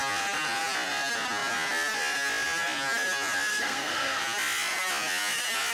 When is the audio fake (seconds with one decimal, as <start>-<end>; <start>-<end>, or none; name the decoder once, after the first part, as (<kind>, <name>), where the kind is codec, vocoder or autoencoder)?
3.5-4.2 (codec, SNAC)